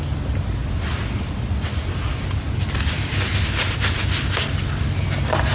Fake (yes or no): no